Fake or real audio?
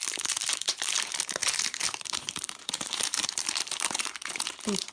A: fake